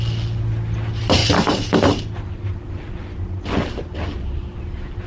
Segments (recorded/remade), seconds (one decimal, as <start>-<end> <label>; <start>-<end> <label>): 0.0-5.1 recorded